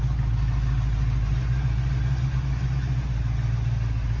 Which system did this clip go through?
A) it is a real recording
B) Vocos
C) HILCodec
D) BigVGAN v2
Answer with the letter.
A